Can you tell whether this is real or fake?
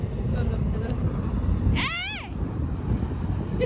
real